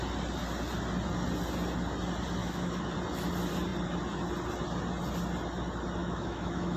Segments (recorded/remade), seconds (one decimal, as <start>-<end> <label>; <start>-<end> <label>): 0.0-2.4 recorded; 2.4-2.9 remade; 2.9-6.0 recorded; 6.0-6.8 remade